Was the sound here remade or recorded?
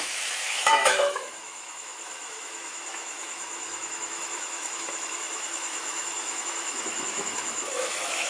remade